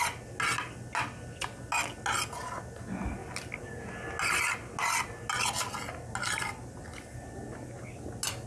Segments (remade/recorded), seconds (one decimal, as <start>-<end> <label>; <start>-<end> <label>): 0.0-8.5 recorded